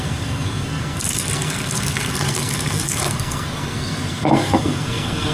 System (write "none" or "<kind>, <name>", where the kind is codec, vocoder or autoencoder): codec, SNAC